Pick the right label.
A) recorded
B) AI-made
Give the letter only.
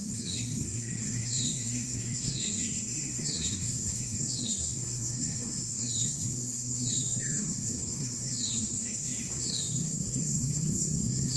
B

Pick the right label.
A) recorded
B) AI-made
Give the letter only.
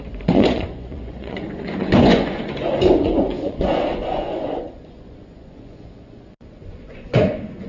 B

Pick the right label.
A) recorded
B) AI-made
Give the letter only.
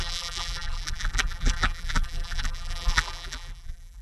B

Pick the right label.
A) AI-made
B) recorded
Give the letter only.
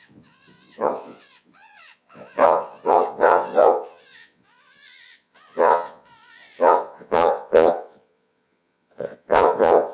A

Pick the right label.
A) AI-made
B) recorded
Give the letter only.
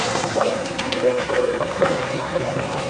A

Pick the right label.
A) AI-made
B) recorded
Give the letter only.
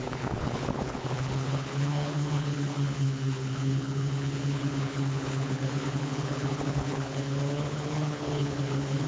A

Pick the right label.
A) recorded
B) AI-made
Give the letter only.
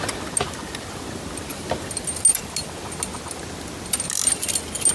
A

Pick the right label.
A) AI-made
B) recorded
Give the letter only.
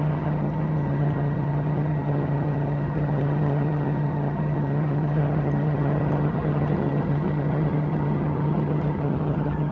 A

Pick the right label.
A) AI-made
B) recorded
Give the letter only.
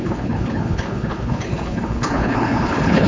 A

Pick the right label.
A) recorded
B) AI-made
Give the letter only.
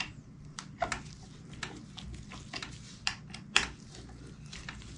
A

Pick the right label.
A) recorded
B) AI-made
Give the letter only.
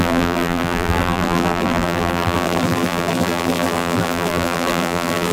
B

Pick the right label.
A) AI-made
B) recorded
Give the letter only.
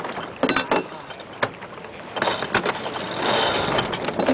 B